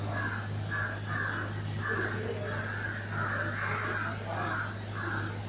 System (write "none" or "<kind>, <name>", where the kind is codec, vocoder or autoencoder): none